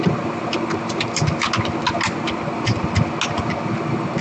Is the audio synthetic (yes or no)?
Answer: no